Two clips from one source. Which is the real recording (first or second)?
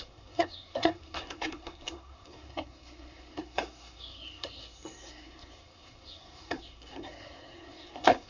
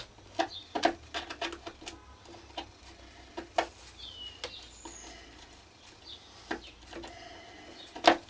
second